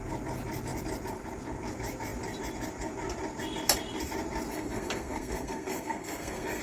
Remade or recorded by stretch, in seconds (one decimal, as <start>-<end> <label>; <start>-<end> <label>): 0.0-4.5 recorded; 4.5-6.6 remade